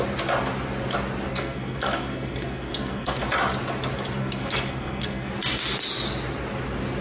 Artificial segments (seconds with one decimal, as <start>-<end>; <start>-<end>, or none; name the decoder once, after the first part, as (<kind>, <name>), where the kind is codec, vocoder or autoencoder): 1.3-3.2 (codec, SNAC); 4.2-5.3